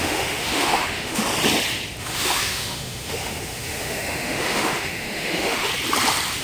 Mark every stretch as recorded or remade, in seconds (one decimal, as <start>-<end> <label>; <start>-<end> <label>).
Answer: 0.0-1.2 remade; 1.2-2.0 recorded; 2.0-5.7 remade; 5.7-6.4 recorded

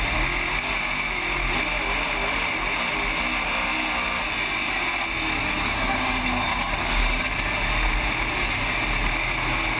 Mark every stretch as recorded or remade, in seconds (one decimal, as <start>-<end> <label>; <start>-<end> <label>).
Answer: 0.0-5.4 recorded; 5.4-7.2 remade; 7.2-9.8 recorded

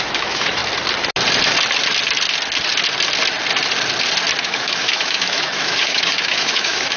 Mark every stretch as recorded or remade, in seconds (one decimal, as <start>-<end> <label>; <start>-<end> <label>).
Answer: 0.0-0.6 remade; 0.6-4.4 recorded; 4.4-7.0 remade

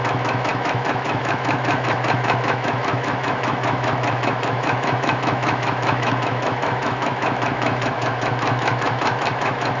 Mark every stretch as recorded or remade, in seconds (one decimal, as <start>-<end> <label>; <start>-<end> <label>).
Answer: 0.0-9.8 remade

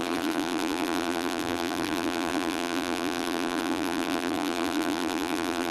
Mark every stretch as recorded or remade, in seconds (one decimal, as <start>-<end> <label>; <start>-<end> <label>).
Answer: 0.0-5.7 remade

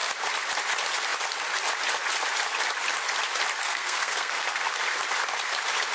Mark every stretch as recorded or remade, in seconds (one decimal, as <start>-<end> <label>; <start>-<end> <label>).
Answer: 0.0-3.6 recorded; 3.6-4.8 remade; 4.8-5.9 recorded

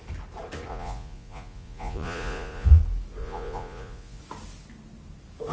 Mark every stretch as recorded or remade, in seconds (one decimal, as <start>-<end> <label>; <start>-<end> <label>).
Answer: 0.0-0.7 recorded; 0.7-2.8 remade; 2.8-3.2 recorded; 3.2-4.2 remade; 4.2-5.5 recorded

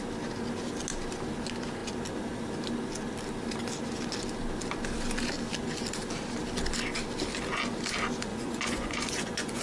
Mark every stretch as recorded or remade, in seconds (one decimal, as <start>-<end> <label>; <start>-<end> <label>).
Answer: 0.0-8.3 recorded; 8.3-9.6 remade